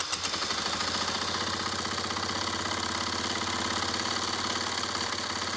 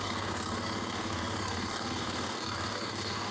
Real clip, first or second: first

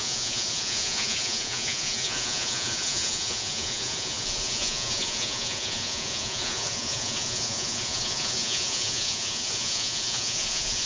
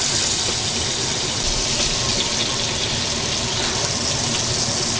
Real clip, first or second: second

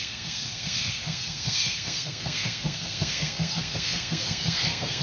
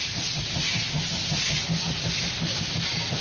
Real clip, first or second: second